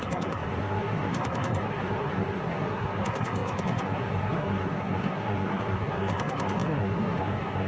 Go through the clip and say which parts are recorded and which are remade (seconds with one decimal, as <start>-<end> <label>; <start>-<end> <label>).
0.0-7.7 remade